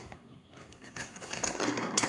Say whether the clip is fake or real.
fake